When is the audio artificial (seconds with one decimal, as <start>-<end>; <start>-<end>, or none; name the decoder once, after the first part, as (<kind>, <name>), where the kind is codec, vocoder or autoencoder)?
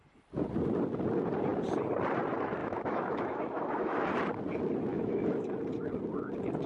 2.6-4.1 (autoencoder, DAC-VAE); 4.9-5.5